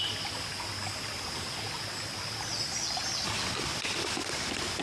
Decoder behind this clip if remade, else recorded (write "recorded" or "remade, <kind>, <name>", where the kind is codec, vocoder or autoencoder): recorded